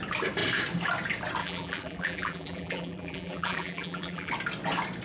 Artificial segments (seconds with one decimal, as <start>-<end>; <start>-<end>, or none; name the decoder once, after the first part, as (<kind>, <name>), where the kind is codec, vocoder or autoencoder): 1.4-4.3 (vocoder, BigVGAN v2)